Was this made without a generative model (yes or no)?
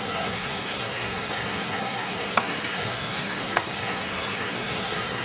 no